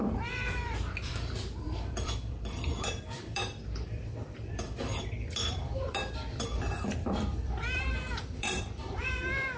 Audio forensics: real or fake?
fake